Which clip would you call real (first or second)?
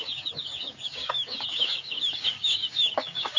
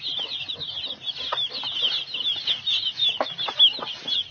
second